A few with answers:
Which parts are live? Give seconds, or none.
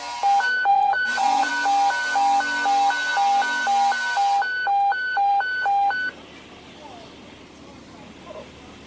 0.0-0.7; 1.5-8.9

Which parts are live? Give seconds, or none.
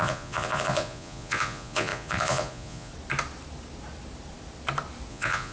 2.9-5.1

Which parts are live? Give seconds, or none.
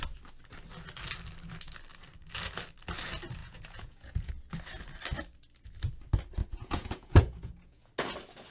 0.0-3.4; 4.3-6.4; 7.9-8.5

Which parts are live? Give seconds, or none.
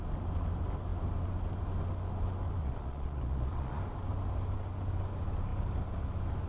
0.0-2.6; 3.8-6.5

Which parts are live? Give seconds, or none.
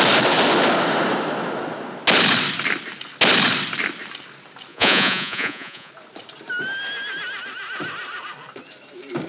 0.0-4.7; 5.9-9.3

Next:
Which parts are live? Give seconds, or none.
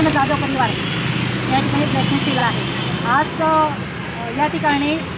0.0-5.2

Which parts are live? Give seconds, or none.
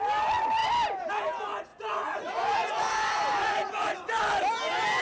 0.0-1.7; 2.9-3.4; 4.2-5.0